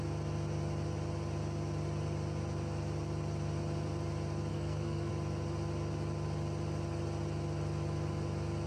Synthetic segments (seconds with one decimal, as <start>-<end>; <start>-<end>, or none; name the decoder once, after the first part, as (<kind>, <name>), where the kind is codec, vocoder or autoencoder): 4.5-5.1 (codec, SNAC)